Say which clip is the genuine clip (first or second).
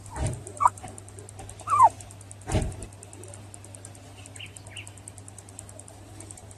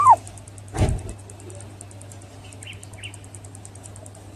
second